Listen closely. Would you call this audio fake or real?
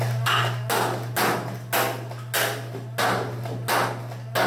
real